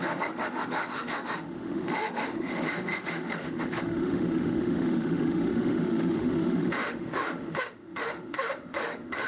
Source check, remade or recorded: remade